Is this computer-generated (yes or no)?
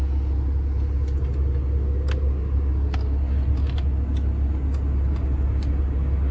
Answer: no